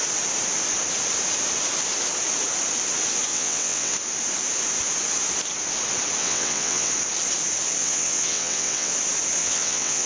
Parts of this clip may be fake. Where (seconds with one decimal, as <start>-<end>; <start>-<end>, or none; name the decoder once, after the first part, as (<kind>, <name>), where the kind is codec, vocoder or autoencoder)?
3.3-3.9 (vocoder, WaveNeXt); 6.2-6.9; 7.8-8.9; 9.4-10.1